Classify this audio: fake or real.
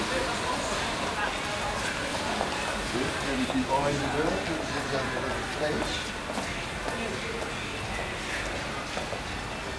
real